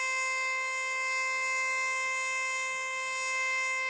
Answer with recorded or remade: recorded